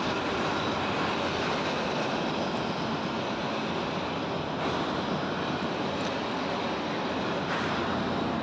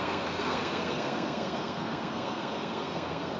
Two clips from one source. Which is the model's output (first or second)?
second